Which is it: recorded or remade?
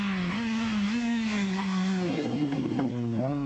remade